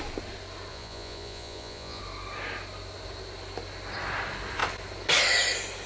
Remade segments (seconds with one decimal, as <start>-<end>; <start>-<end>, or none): 0.7-2.0